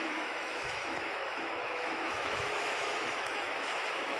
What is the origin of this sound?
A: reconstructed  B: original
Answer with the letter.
A